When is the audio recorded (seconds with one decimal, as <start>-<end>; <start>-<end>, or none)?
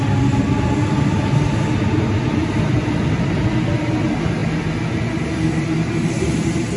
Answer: 0.0-6.8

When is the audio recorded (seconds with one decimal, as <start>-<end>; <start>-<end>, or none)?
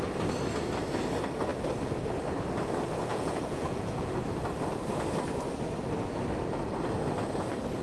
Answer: 0.0-3.1; 4.2-7.8